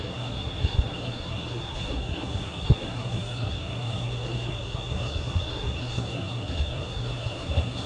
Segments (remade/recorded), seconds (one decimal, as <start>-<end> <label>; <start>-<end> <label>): 0.0-7.9 remade